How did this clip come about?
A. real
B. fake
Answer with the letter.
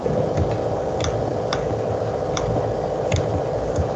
A